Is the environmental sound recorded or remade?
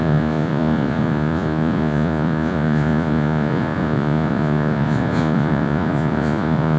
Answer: remade